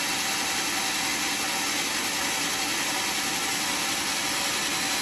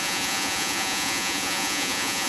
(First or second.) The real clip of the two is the first